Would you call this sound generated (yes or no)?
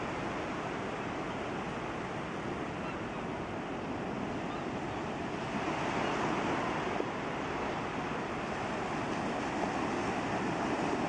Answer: no